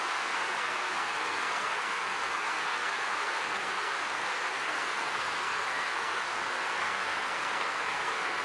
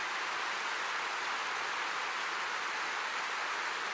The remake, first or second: first